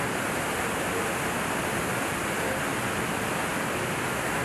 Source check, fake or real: real